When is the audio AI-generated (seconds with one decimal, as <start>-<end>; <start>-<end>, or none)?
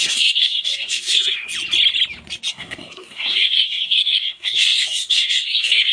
0.0-1.5; 2.5-5.9